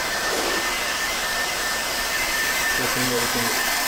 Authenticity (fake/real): fake